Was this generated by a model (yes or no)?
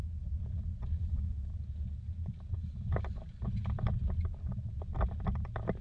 no